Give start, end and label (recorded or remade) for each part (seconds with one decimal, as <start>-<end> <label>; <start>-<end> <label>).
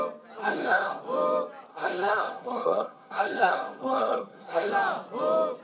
0.0-0.4 recorded; 0.4-1.0 remade; 1.0-1.7 recorded; 1.7-4.7 remade; 4.7-5.6 recorded